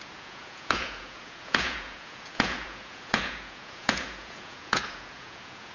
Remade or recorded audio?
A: remade